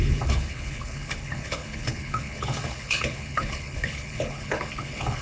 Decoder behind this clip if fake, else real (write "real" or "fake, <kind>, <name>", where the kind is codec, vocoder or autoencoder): fake, codec, HILCodec